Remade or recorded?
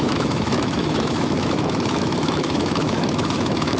remade